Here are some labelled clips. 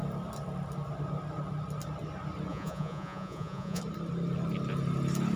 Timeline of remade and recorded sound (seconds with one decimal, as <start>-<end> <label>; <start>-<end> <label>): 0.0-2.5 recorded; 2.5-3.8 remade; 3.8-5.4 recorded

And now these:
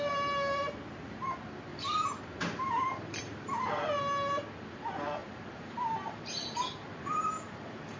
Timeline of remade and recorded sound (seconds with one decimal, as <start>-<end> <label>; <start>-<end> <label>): 0.0-1.7 recorded; 1.7-3.7 remade; 3.7-5.2 recorded; 5.2-8.0 remade

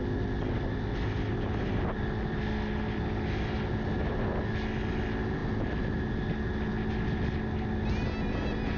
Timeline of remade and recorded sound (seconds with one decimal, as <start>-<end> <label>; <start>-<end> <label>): 0.0-8.8 recorded

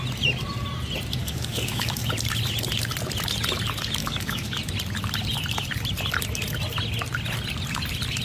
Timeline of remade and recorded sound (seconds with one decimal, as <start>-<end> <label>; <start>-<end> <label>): 0.0-1.2 recorded; 1.2-2.1 remade; 2.1-4.0 recorded; 4.0-4.6 remade; 4.6-8.2 recorded

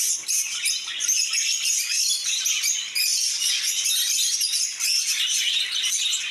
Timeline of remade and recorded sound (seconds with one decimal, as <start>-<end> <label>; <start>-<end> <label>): 0.0-6.3 recorded

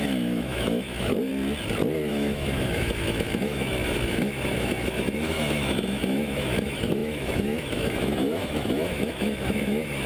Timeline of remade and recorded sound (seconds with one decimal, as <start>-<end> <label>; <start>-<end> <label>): 0.0-1.3 remade; 1.3-2.1 recorded; 2.1-10.1 remade